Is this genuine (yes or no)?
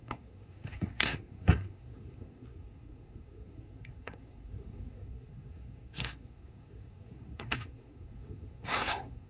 no